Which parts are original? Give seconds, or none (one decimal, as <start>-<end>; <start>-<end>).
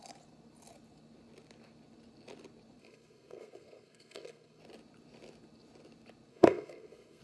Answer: 0.0-2.8; 4.6-6.3